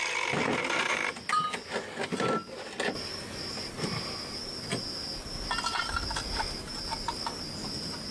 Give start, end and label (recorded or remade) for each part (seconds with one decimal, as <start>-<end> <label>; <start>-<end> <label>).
0.0-8.1 recorded